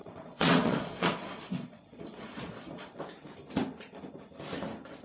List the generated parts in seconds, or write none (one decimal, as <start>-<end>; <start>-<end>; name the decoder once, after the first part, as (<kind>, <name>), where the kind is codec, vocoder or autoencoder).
0.0-3.0 (vocoder, Vocos)